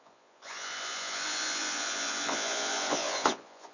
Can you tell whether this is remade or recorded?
remade